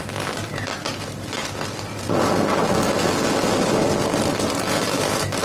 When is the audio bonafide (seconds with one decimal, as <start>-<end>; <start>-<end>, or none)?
0.0-5.4